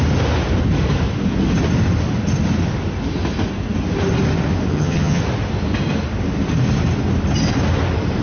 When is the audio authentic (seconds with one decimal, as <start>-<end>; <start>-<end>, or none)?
0.0-4.7; 5.2-8.2